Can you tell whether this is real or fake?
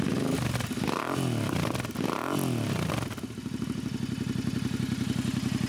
real